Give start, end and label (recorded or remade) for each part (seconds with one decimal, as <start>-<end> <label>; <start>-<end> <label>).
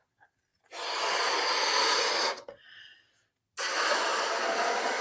0.0-5.0 recorded